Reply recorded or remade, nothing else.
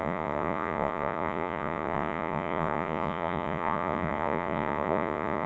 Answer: remade